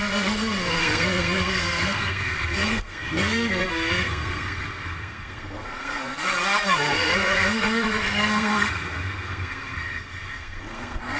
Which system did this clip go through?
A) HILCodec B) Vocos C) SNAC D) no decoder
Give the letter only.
C